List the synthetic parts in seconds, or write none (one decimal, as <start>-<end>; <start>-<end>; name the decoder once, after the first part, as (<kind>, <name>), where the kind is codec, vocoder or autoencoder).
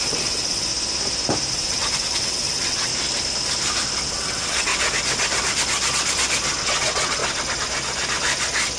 0.0-0.7 (vocoder, WaveNeXt); 1.5-2.9; 4.1-4.7; 6.6-7.2